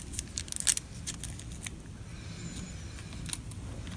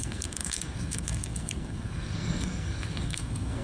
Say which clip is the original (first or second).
first